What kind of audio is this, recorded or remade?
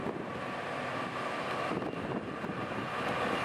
recorded